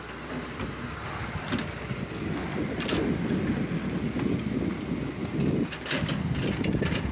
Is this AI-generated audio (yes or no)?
no